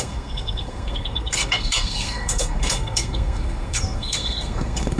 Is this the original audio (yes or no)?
no